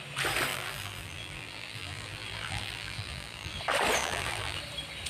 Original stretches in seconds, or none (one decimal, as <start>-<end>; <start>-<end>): 0.0-0.5; 3.6-4.0; 4.6-5.1